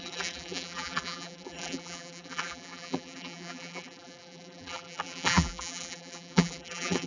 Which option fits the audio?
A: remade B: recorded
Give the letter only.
A